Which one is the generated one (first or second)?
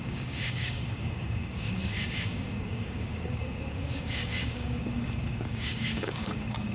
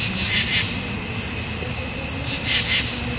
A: first